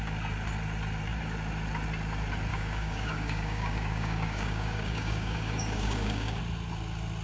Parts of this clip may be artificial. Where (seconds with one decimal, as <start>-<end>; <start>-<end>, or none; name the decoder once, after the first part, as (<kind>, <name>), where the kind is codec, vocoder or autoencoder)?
2.5-6.4 (codec, DAC)